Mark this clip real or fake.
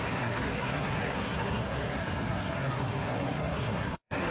fake